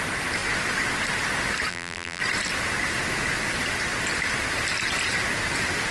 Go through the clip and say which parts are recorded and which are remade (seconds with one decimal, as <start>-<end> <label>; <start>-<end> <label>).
0.0-1.7 recorded; 1.7-2.2 remade; 2.2-5.9 recorded